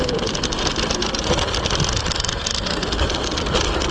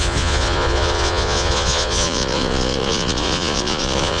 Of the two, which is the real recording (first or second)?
first